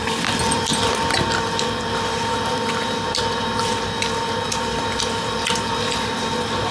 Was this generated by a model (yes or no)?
yes